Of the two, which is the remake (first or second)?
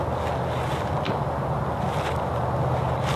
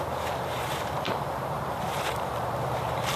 second